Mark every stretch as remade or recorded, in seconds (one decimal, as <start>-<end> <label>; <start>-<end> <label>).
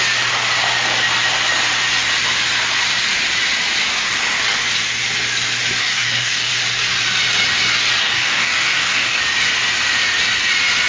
0.0-5.8 recorded; 5.8-6.5 remade; 6.5-8.0 recorded; 8.0-9.2 remade; 9.2-10.9 recorded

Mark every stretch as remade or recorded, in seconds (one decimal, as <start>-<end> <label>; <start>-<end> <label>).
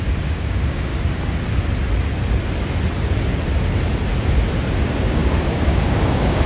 0.0-0.9 remade; 0.9-4.8 recorded; 4.8-6.5 remade